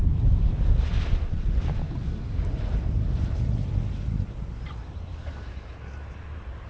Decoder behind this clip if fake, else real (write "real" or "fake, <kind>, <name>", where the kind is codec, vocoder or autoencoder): real